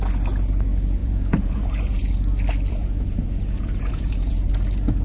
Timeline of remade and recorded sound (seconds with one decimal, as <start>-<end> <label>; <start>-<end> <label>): 0.0-1.0 recorded; 1.0-2.0 remade; 2.0-2.8 recorded; 2.8-4.5 remade; 4.5-5.0 recorded